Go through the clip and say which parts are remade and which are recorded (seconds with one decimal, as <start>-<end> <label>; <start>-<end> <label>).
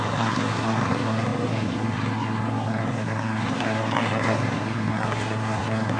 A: 0.0-6.0 remade